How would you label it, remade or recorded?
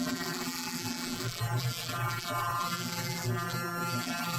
remade